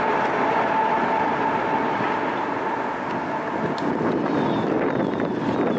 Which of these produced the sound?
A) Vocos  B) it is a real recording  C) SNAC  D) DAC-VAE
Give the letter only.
B